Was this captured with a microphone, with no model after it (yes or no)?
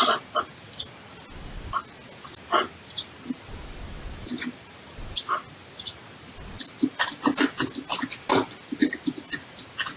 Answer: yes